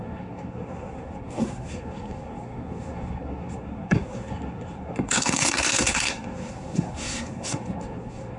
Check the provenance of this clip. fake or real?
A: fake